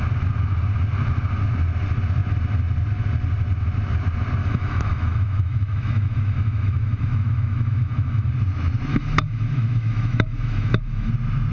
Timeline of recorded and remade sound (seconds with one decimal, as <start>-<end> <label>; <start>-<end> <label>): 0.0-4.4 recorded; 4.4-8.3 remade; 8.3-8.9 recorded; 8.9-11.1 remade; 11.1-11.5 recorded